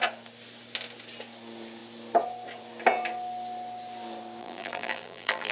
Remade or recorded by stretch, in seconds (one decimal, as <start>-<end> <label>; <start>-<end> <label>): 0.0-4.4 recorded; 4.4-5.5 remade